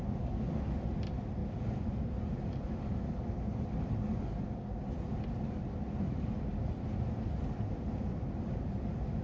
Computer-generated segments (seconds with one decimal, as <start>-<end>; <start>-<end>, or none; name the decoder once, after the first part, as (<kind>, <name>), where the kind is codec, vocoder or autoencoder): none